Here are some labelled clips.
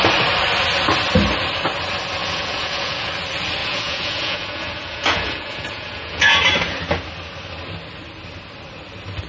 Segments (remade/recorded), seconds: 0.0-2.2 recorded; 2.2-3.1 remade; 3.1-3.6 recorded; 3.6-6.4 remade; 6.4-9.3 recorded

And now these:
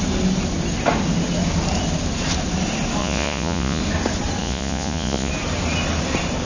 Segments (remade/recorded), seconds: 0.0-3.0 recorded; 3.0-3.8 remade; 3.8-4.4 recorded; 4.4-5.3 remade; 5.3-6.5 recorded

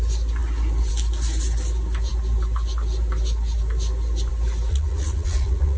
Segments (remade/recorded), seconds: 0.0-4.7 recorded; 4.7-5.8 remade

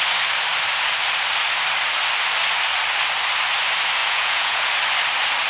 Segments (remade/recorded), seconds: 0.0-4.0 recorded; 4.0-4.7 remade; 4.7-5.5 recorded

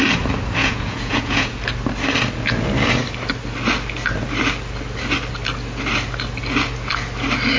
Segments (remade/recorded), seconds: 0.0-0.6 recorded; 0.6-1.6 remade; 1.6-7.6 recorded

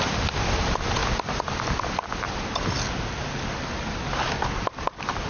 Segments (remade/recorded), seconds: 0.0-5.3 recorded

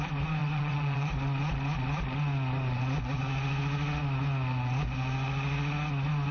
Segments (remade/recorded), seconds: 0.0-0.4 recorded; 0.4-1.1 remade; 1.1-6.3 recorded